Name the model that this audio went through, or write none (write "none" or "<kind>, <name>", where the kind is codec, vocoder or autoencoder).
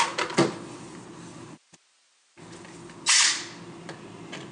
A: none